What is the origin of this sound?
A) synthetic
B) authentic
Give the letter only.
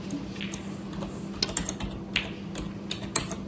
B